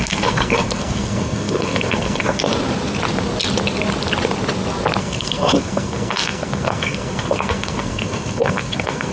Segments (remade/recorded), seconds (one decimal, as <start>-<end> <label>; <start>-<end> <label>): 0.0-2.5 remade; 2.5-5.0 recorded; 5.0-9.1 remade